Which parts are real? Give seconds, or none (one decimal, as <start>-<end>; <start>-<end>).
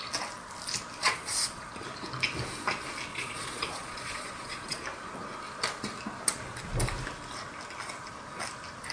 0.0-1.0; 1.7-3.1; 4.8-8.9